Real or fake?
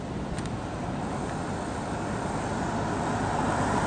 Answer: fake